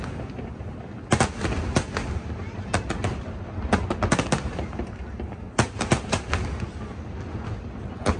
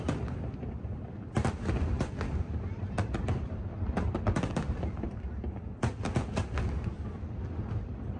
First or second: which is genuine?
first